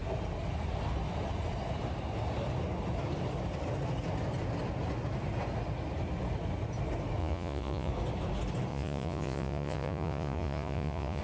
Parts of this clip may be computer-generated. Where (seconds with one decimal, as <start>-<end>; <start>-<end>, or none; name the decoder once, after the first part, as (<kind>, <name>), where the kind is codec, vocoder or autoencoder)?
7.2-7.9 (vocoder, Vocos); 8.7-11.2